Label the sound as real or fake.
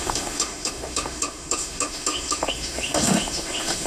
fake